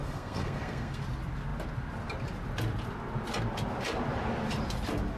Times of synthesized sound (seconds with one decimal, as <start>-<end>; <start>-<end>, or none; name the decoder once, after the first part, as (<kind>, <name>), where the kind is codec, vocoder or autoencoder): 0.0-1.0 (codec, SNAC)